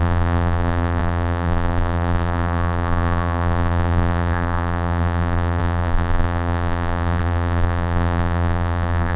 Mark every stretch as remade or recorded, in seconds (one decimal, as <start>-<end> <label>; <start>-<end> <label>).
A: 0.0-9.2 remade